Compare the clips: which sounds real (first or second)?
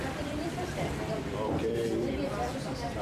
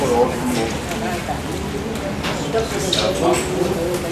second